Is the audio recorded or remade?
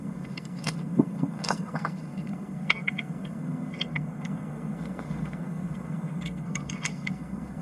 remade